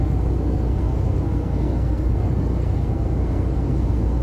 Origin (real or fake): fake